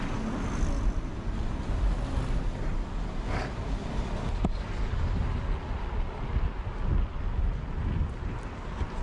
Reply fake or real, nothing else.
real